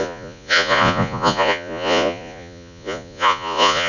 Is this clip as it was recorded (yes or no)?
no